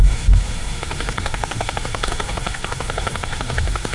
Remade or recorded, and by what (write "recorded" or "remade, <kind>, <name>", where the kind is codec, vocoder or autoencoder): remade, codec, SNAC